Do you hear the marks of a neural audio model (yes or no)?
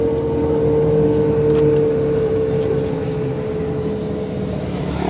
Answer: no